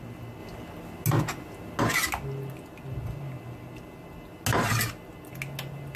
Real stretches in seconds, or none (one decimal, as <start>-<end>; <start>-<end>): 0.0-6.0